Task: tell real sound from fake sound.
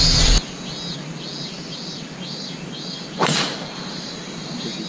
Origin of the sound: real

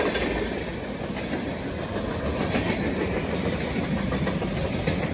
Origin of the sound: real